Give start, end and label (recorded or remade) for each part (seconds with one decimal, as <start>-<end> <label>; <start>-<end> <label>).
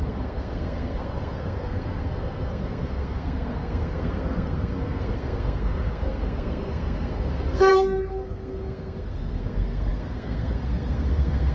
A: 0.0-11.5 remade